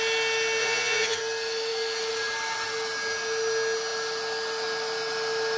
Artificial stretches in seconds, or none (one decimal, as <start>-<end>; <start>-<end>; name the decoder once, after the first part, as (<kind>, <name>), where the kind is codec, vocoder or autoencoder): 0.6-1.2 (vocoder, Vocos)